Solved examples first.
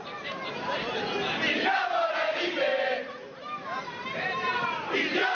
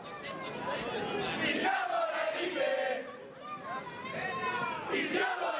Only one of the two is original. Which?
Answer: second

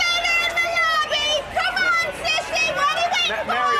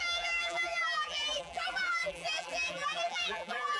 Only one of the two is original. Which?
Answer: first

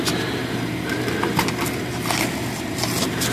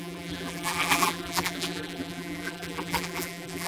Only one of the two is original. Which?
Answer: first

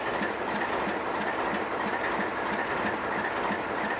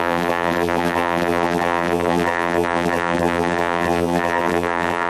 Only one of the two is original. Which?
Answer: first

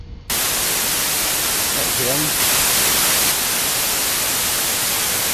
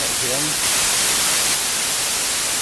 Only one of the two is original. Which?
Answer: first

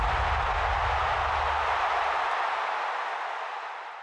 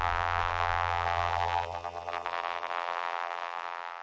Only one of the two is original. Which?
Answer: first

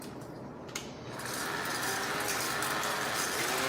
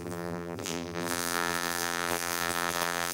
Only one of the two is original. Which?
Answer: first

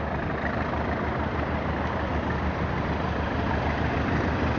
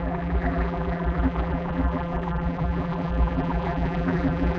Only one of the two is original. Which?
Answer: first